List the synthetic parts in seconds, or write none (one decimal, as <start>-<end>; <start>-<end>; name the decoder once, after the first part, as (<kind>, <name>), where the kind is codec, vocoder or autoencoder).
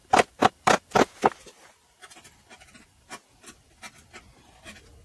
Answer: 0.0-3.0 (vocoder, BigVGAN v2)